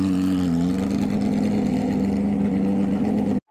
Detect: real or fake real